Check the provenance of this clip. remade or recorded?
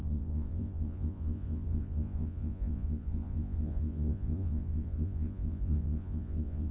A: remade